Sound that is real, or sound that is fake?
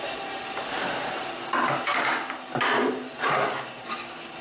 real